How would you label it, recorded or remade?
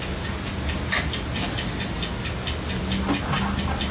recorded